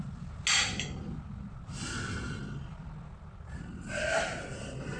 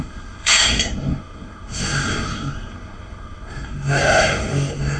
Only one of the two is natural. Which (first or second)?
first